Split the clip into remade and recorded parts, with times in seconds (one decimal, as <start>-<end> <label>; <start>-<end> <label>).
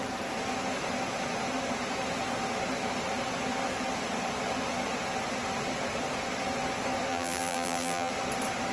0.0-7.1 recorded; 7.1-8.1 remade; 8.1-8.7 recorded